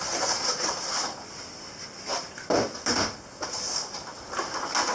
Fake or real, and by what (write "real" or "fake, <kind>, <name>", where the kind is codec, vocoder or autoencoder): real